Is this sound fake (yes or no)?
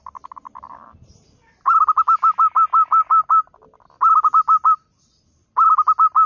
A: no